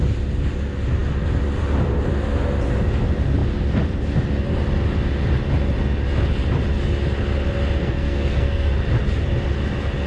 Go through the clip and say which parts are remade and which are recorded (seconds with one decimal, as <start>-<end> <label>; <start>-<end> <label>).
0.0-7.8 recorded; 7.8-8.7 remade; 8.7-10.1 recorded

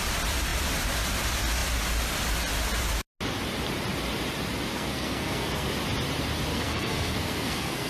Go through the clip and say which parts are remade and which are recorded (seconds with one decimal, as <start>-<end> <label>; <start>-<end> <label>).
0.0-4.7 recorded; 4.7-5.7 remade; 5.7-6.5 recorded; 6.5-7.9 remade

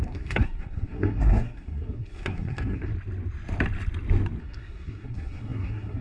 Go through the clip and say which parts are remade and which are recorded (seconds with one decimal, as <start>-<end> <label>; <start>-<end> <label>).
0.0-2.9 remade; 2.9-4.4 recorded; 4.4-6.0 remade

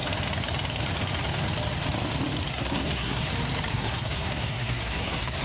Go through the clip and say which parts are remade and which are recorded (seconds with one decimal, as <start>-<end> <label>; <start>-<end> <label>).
0.0-2.5 recorded; 2.5-3.3 remade; 3.3-3.7 recorded; 3.7-5.4 remade

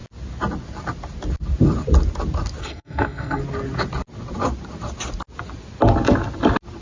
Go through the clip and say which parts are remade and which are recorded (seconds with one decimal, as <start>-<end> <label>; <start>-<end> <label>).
0.0-2.6 recorded; 2.6-3.4 remade; 3.4-6.8 recorded

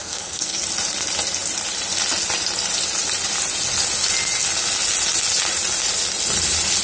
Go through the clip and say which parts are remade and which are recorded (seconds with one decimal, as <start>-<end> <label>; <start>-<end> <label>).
0.0-0.6 remade; 0.6-6.8 recorded

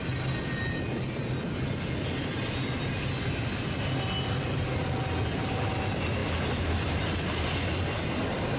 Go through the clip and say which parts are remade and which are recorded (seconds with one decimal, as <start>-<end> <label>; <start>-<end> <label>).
0.0-8.6 recorded